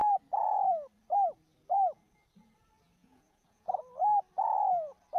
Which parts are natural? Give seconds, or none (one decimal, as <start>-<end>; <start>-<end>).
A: 0.0-3.0; 3.8-5.2